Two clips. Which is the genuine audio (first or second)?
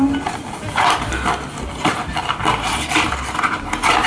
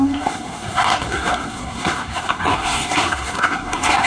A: first